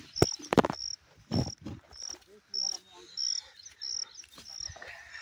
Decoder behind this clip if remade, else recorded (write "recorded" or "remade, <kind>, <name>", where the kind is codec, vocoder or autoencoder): recorded